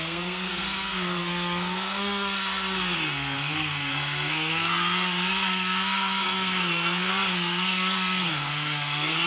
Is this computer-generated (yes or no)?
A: yes